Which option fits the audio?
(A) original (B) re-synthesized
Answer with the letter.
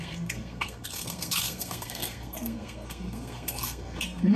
B